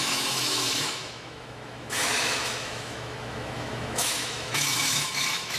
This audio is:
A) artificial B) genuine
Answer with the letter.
A